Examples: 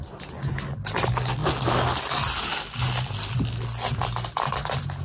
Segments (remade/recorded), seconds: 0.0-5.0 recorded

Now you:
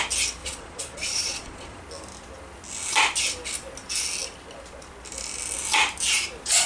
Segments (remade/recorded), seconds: 0.0-0.4 recorded; 0.4-1.8 remade; 1.8-6.7 recorded

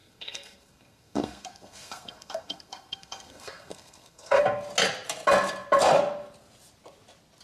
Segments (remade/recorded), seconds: 0.0-4.4 remade; 4.4-7.4 recorded

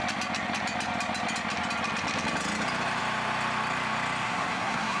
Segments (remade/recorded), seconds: 0.0-4.2 recorded; 4.2-5.0 remade

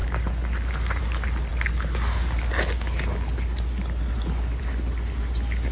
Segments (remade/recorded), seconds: 0.0-5.7 recorded

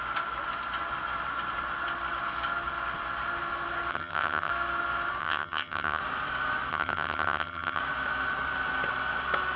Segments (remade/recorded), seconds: 0.0-3.9 recorded; 3.9-4.5 remade; 4.5-5.2 recorded; 5.2-6.0 remade; 6.0-6.7 recorded; 6.7-7.8 remade; 7.8-9.6 recorded